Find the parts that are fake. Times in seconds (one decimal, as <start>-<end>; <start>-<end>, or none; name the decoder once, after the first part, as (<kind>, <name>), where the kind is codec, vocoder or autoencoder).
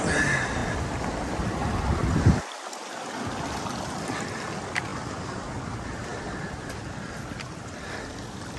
none